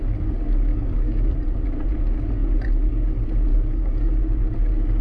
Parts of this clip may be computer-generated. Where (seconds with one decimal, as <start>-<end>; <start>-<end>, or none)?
0.7-1.3; 3.5-4.2